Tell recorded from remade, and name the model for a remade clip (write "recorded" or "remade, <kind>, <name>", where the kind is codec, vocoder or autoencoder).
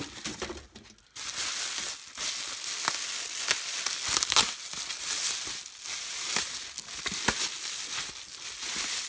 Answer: recorded